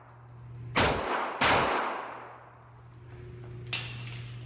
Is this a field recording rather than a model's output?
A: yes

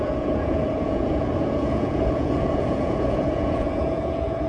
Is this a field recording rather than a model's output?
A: no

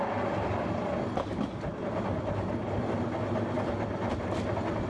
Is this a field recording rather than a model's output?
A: yes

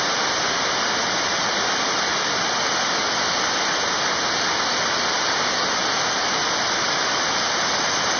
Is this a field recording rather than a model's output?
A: yes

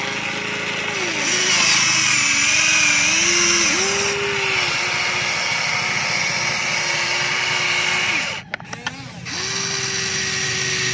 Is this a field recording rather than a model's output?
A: yes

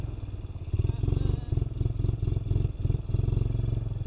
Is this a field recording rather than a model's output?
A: yes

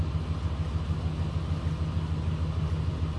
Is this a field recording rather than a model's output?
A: yes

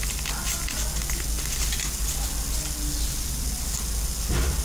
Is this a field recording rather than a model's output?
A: yes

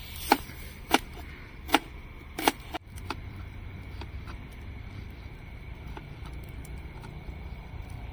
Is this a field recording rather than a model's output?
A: no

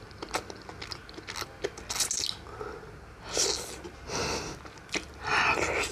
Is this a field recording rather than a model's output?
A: yes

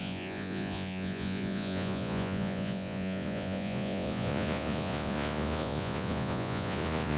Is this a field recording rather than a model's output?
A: no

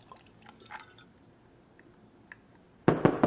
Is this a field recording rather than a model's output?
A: yes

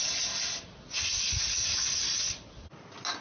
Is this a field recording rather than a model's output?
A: yes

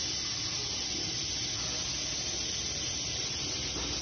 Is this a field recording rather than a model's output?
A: yes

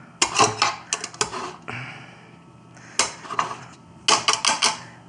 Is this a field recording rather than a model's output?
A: yes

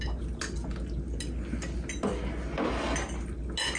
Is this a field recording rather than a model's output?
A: yes